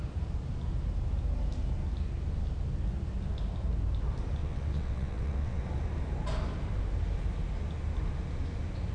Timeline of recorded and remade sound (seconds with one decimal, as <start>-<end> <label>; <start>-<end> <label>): 0.0-4.4 recorded; 4.4-5.6 remade; 5.6-8.9 recorded